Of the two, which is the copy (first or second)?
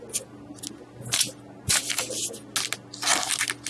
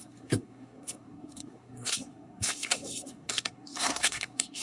second